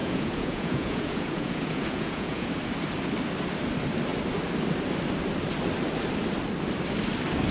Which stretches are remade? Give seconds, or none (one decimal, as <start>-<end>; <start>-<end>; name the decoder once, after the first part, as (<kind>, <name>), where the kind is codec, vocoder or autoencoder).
0.0-2.5 (vocoder, Vocos)